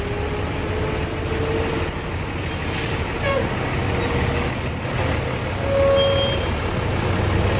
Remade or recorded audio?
recorded